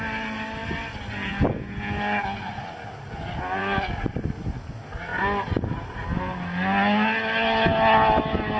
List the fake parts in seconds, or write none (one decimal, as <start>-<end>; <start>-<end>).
none